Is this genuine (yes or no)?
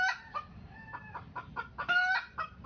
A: yes